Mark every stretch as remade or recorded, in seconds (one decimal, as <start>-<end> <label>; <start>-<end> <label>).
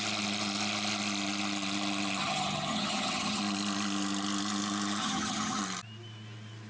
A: 0.0-2.2 recorded; 2.2-3.4 remade; 3.4-5.0 recorded; 5.0-5.6 remade; 5.6-6.7 recorded